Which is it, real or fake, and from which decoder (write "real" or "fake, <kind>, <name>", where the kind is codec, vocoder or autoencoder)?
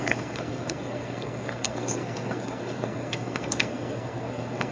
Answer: fake, codec, SNAC